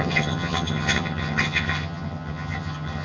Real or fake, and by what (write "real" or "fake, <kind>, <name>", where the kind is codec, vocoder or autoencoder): fake, vocoder, HiFi-GAN